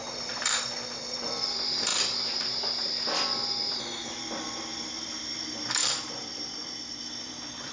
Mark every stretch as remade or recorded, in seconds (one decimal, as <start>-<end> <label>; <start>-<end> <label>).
0.0-7.7 remade